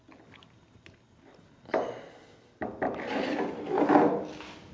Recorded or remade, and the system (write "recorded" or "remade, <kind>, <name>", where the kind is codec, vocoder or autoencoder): recorded